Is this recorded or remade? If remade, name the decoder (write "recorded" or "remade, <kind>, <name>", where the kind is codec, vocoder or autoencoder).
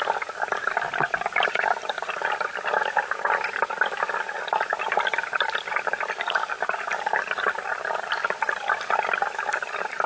recorded